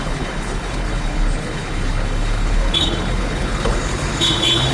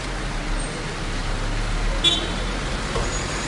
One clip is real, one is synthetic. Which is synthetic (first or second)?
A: first